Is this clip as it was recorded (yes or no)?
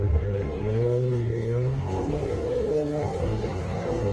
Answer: no